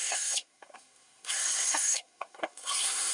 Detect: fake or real fake